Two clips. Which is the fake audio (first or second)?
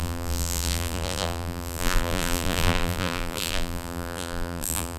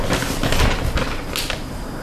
first